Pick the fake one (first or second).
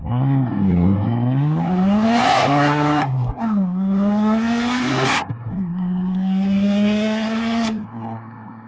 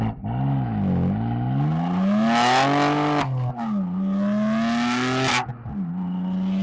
first